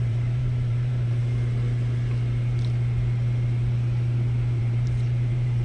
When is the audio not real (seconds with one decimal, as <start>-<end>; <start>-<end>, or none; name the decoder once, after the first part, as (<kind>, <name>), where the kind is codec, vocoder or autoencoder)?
0.0-1.2 (vocoder, BigVGAN v2); 4.6-5.6